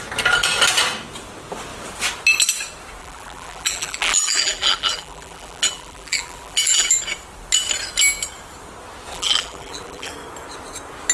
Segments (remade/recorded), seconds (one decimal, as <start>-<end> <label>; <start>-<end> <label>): 0.0-3.0 recorded; 3.0-7.0 remade; 7.0-9.1 recorded; 9.1-10.1 remade; 10.1-11.1 recorded